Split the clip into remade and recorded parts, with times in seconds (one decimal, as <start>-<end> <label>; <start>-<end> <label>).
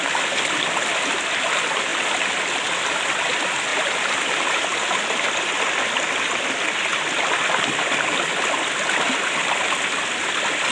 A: 0.0-3.7 recorded; 3.7-4.6 remade; 4.6-10.7 recorded